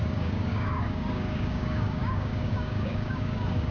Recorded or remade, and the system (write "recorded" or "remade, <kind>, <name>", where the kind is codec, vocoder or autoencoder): remade, codec, DAC